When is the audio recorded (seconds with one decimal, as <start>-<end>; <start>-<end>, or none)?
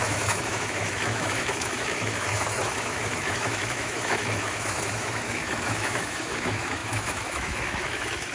none